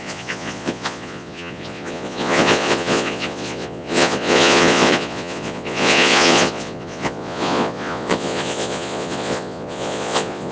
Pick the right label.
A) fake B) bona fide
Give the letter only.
A